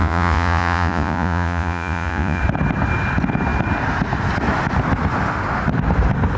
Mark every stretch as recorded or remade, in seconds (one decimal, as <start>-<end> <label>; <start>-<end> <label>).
0.0-2.4 remade; 2.4-6.4 recorded